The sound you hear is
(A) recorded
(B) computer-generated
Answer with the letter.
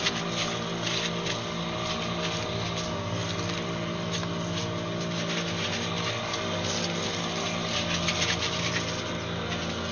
A